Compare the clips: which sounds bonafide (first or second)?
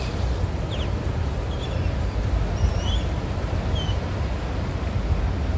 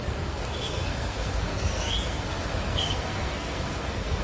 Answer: first